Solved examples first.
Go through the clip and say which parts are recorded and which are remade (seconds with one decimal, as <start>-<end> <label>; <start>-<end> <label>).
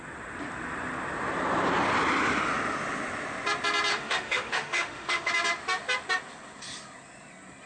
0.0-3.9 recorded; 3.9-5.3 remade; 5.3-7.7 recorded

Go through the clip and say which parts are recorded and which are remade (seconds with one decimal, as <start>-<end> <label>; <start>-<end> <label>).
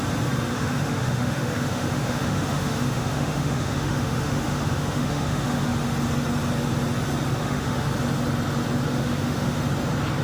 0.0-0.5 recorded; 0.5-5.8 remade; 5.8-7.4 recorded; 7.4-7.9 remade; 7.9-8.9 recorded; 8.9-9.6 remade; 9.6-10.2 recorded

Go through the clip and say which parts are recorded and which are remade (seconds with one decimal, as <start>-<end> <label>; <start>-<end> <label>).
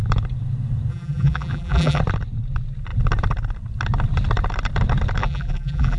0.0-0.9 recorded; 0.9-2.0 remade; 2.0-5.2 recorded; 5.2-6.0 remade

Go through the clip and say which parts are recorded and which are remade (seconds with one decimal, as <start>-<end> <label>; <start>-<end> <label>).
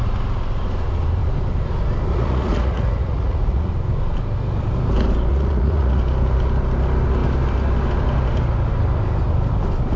0.0-2.1 recorded; 2.1-3.7 remade; 3.7-5.3 recorded; 5.3-6.0 remade; 6.0-10.0 recorded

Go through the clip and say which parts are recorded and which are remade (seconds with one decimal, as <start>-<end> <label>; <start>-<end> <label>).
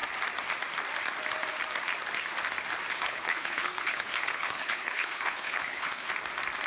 0.0-2.9 recorded; 2.9-6.1 remade; 6.1-6.7 recorded